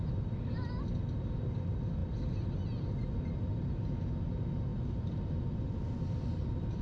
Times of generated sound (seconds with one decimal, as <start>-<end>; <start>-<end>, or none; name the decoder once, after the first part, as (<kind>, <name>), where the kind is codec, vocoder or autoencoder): none